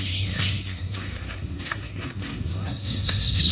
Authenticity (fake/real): fake